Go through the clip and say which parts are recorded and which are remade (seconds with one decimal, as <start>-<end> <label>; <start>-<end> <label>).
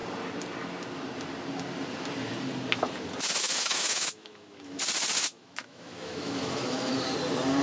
0.0-3.4 recorded; 3.4-4.8 remade; 4.8-5.2 recorded; 5.2-6.9 remade; 6.9-7.6 recorded